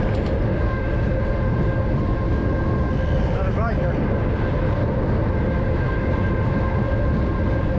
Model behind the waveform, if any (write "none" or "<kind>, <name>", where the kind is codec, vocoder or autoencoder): none